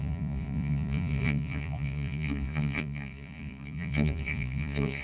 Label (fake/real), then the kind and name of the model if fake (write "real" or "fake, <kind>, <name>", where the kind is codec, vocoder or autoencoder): fake, vocoder, Vocos